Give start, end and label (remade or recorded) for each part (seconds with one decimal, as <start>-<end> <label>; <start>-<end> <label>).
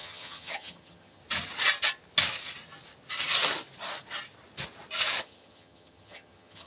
0.0-1.2 remade; 1.2-5.2 recorded; 5.2-6.7 remade